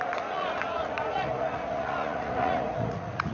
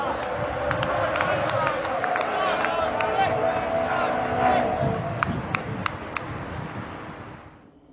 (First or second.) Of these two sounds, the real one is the second